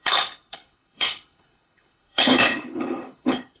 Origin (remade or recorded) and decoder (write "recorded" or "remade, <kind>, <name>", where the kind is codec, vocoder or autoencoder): remade, codec, HILCodec